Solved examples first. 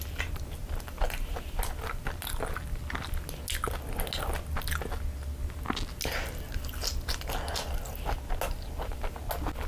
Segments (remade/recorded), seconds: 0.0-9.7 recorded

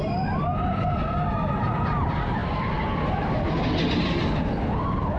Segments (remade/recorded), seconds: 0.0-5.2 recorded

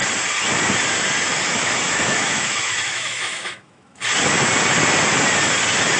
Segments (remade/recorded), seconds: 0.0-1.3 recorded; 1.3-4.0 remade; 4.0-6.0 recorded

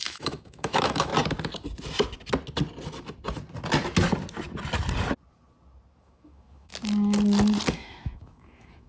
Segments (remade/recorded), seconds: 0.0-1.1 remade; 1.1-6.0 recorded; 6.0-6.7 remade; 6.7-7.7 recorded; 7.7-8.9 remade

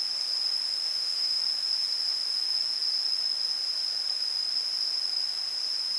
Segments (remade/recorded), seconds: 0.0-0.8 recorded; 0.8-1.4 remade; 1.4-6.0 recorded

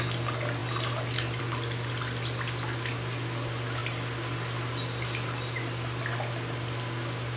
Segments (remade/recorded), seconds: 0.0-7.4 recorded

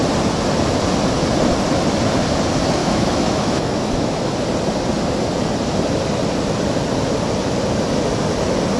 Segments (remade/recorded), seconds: 0.0-2.8 recorded; 2.8-4.3 remade; 4.3-8.8 recorded

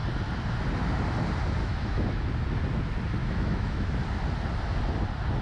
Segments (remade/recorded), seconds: 0.0-1.6 recorded; 1.6-2.3 remade; 2.3-3.2 recorded; 3.2-4.0 remade; 4.0-5.4 recorded